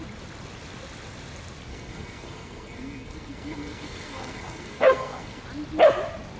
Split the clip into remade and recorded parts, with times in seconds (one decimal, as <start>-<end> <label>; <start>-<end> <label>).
0.0-1.7 recorded; 1.7-5.4 remade; 5.4-6.4 recorded